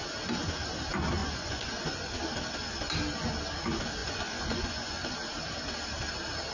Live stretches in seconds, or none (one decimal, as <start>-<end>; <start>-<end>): 0.0-1.2; 2.2-4.0; 5.1-6.5